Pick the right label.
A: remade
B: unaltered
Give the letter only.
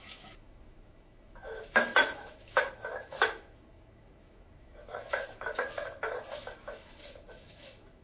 A